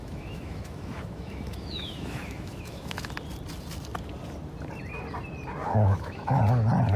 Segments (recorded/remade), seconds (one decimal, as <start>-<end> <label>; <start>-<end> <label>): 0.0-3.1 remade; 3.1-5.6 recorded; 5.6-6.4 remade; 6.4-7.0 recorded